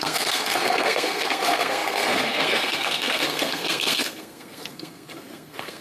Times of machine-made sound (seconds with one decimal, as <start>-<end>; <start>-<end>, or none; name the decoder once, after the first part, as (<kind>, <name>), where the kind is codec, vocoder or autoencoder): 0.0-5.8 (codec, SNAC)